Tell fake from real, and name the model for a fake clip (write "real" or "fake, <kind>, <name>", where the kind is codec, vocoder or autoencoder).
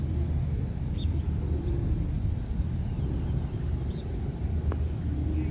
real